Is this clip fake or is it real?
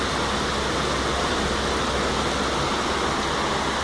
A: real